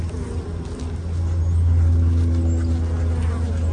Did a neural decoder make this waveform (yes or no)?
no